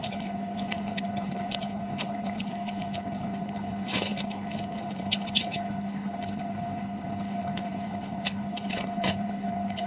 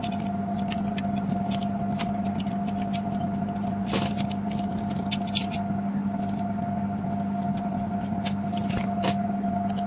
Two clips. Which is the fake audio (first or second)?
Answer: first